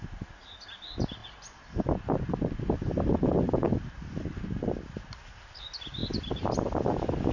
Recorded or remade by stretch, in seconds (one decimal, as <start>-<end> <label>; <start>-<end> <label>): 0.0-7.3 recorded